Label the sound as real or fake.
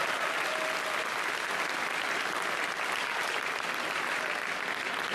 real